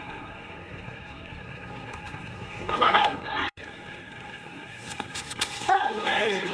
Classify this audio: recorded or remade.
remade